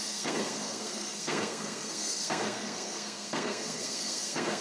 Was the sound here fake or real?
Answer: fake